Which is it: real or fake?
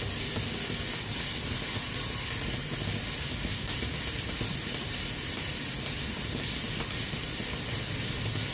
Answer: real